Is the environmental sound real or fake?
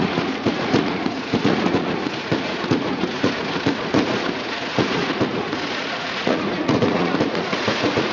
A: fake